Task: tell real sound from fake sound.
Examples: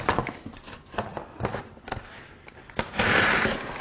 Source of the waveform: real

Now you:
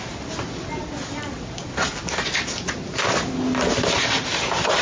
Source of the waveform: real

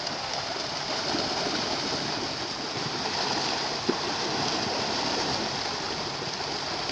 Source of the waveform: real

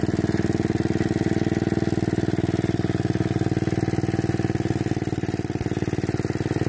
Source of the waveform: real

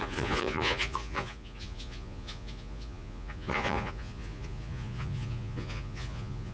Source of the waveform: fake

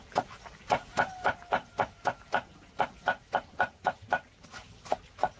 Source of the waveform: real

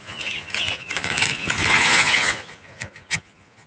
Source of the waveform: fake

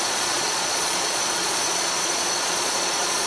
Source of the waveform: fake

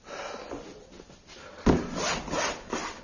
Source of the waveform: real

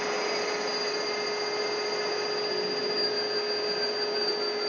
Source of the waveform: real